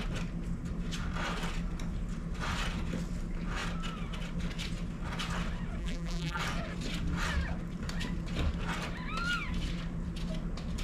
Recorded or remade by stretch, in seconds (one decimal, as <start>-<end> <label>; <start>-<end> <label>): 0.0-5.8 recorded; 5.8-6.4 remade; 6.4-10.8 recorded